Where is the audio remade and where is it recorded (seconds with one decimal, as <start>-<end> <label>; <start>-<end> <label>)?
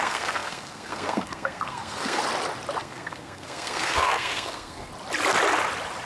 0.0-2.2 remade; 2.2-2.8 recorded; 2.8-4.9 remade; 4.9-6.1 recorded